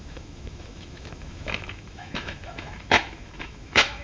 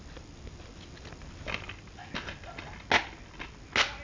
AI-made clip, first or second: first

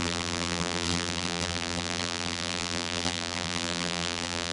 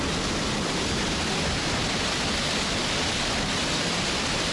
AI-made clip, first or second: first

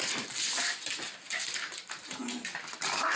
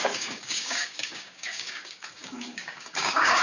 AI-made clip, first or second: second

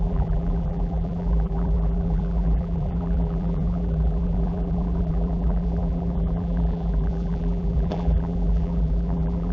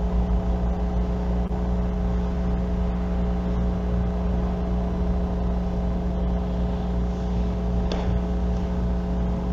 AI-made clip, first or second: first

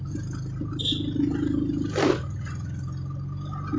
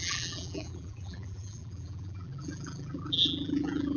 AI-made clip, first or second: second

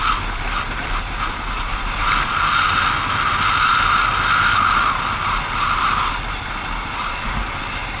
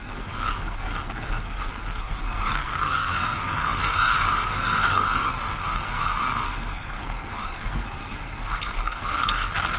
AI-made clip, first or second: second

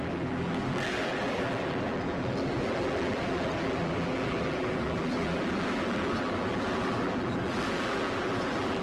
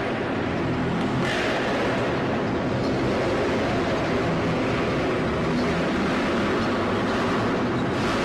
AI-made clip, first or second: first